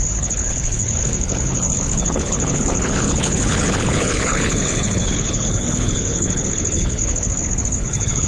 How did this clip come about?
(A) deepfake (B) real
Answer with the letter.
A